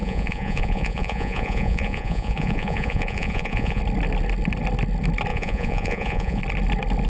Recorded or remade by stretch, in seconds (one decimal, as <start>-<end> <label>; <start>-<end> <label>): 0.0-3.8 remade; 3.8-5.3 recorded; 5.3-6.4 remade; 6.4-7.1 recorded